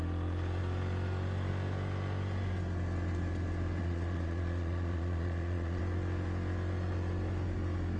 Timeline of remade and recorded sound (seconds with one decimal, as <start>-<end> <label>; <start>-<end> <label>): 0.0-3.8 recorded; 3.8-5.8 remade; 5.8-8.0 recorded